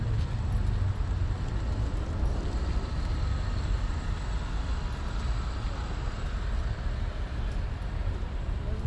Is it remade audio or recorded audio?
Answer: recorded